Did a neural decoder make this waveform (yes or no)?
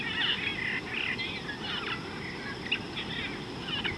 no